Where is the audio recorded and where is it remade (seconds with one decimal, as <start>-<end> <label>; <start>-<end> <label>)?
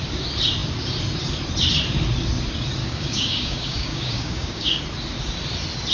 0.0-2.8 recorded; 2.8-4.8 remade; 4.8-5.9 recorded